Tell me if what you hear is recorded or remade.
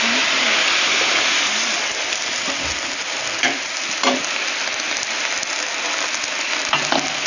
recorded